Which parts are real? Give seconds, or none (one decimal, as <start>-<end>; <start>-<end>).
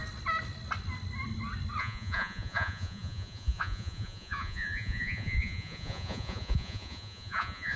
0.0-1.8